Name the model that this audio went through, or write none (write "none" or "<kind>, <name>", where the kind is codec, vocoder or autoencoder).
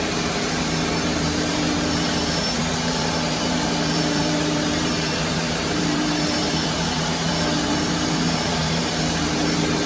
vocoder, BigVGAN v2